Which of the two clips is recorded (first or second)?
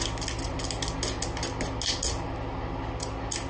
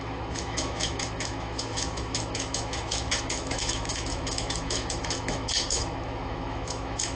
first